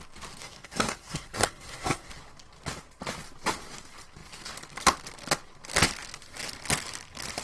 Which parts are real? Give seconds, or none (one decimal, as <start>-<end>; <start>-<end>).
0.0-0.4; 2.1-7.4